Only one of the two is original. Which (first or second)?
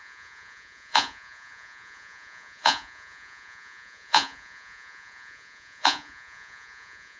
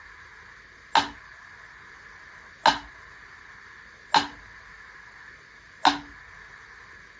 second